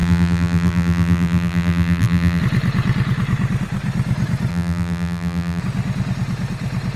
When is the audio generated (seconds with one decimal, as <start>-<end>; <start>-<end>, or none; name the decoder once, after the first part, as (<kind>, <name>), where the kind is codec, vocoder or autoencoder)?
0.0-2.4 (vocoder, BigVGAN v2); 4.5-5.6